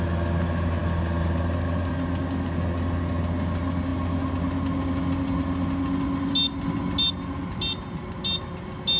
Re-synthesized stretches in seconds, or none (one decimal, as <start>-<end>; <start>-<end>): none